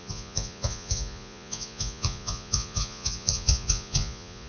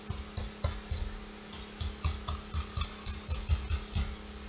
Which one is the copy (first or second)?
first